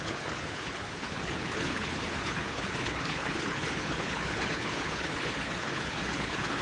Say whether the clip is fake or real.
fake